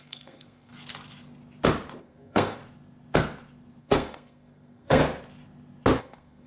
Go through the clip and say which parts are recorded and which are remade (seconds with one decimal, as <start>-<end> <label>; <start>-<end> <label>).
0.0-0.7 remade; 0.7-2.0 recorded; 2.0-2.6 remade; 2.6-3.8 recorded; 3.8-5.0 remade; 5.0-6.0 recorded; 6.0-6.5 remade